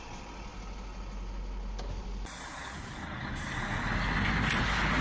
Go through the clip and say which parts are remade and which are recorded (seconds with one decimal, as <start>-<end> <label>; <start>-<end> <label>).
0.0-5.0 recorded